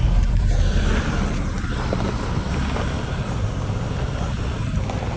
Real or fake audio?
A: fake